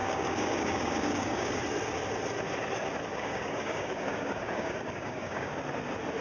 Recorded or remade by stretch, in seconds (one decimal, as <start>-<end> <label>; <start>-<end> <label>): 0.0-1.6 remade; 1.6-3.1 recorded; 3.1-5.5 remade; 5.5-6.2 recorded

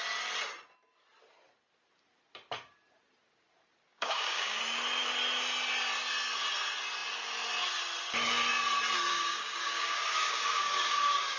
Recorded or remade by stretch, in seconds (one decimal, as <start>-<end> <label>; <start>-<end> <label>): 0.0-3.9 recorded; 3.9-4.6 remade; 4.6-9.1 recorded; 9.1-11.4 remade

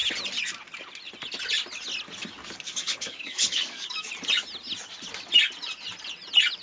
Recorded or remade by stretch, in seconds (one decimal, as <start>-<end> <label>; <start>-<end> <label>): 0.0-2.4 recorded; 2.4-4.1 remade; 4.1-6.6 recorded